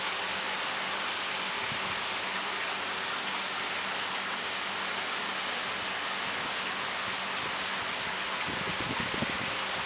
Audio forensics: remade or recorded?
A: recorded